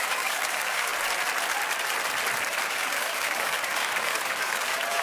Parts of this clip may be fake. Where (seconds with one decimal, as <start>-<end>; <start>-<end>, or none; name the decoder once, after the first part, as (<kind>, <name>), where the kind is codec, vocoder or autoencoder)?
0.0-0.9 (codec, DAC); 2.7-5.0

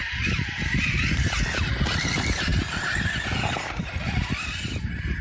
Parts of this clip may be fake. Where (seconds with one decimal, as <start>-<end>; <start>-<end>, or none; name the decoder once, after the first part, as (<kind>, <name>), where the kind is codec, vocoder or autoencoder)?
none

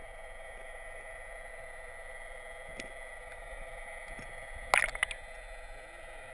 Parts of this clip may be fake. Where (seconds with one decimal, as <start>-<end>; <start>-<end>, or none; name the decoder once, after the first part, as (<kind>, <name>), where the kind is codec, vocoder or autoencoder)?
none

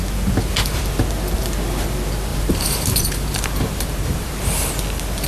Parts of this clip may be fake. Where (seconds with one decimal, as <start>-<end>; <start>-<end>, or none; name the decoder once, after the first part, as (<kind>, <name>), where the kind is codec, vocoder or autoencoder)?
2.3-4.7 (vocoder, BigVGAN v2)

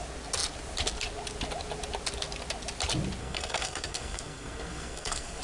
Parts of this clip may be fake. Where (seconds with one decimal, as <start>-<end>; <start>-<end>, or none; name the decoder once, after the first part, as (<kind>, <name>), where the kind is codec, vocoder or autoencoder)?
3.2-5.4 (codec, SNAC)

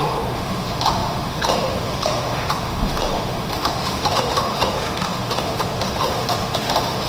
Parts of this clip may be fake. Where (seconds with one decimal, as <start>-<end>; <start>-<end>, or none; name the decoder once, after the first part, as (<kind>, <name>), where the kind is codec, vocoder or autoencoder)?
0.0-7.1 (autoencoder, DAC-VAE)

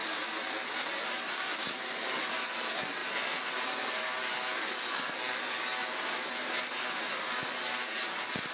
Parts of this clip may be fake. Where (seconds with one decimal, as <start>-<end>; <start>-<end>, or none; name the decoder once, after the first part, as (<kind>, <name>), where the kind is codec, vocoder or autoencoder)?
none